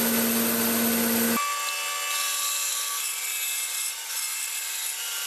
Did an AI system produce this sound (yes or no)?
no